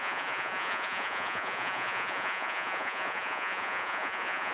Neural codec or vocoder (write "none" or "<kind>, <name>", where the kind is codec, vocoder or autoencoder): vocoder, Vocos